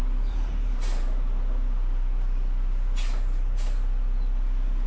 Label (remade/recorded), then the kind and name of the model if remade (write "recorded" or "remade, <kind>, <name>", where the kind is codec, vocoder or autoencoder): recorded